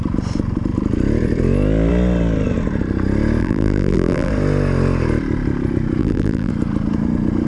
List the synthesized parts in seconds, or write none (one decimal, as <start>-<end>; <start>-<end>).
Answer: 3.4-4.3; 6.0-6.5